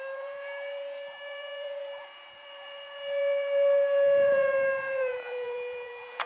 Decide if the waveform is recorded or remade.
remade